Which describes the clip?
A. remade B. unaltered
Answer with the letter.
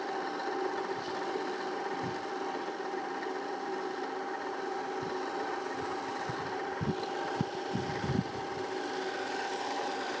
B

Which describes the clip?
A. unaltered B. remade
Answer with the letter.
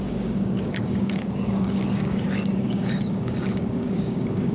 B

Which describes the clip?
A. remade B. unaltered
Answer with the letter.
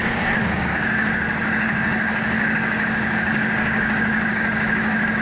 A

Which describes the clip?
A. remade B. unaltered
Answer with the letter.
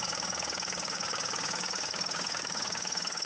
A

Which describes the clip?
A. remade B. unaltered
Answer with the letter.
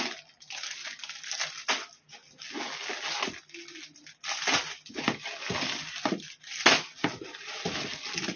B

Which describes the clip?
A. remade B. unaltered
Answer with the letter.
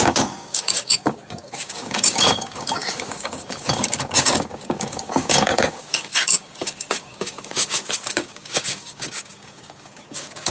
A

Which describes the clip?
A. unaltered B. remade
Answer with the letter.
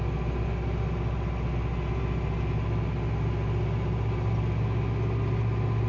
A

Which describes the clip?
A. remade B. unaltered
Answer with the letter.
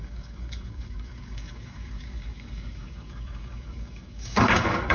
A